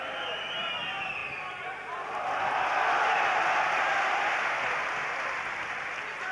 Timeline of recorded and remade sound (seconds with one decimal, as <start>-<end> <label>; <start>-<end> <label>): 0.0-6.3 recorded